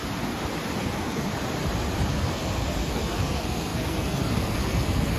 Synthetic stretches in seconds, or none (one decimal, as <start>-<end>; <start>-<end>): 0.8-1.3; 2.1-5.2